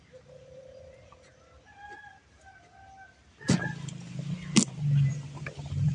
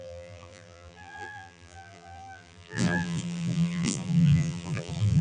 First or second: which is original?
first